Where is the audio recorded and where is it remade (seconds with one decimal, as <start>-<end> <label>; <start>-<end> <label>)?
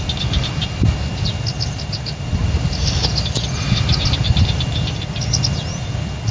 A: 0.0-6.3 recorded